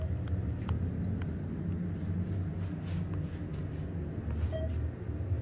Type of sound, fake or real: real